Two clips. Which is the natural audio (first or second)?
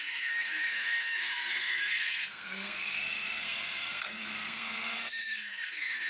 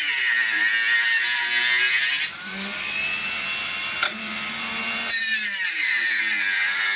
second